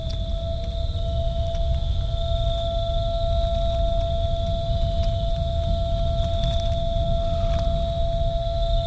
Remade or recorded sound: recorded